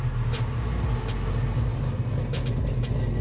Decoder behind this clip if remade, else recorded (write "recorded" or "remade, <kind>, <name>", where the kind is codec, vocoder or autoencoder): recorded